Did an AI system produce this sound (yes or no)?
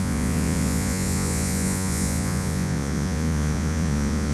yes